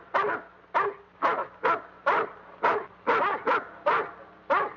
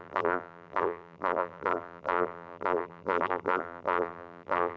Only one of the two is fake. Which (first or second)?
second